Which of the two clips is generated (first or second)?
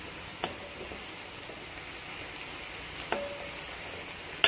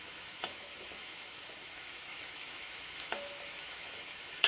second